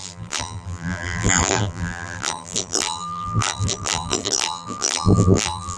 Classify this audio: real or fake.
fake